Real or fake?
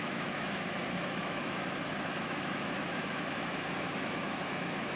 fake